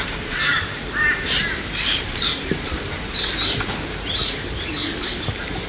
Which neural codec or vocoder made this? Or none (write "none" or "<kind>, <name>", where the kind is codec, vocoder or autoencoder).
vocoder, BigVGAN v2